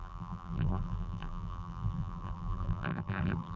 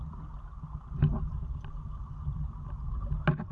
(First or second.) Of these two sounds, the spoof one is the first